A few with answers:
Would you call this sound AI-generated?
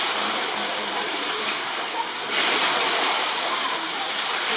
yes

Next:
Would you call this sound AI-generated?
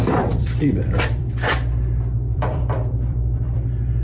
yes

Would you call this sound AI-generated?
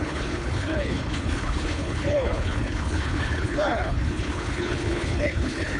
yes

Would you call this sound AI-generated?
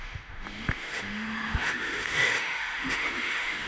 yes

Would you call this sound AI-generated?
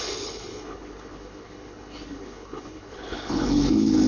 yes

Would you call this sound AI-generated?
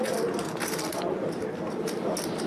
no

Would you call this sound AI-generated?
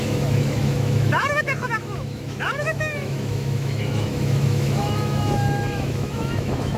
yes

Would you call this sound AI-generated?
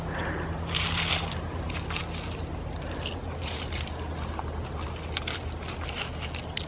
no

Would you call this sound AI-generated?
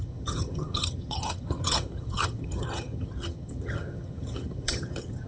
yes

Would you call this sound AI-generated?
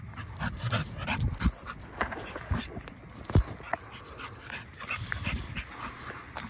no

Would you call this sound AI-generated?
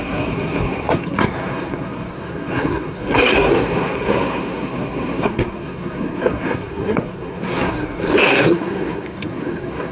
yes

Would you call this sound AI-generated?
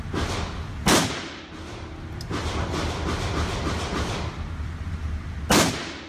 no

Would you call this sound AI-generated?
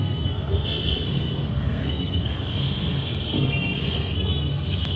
yes